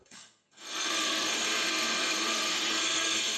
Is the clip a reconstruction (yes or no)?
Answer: yes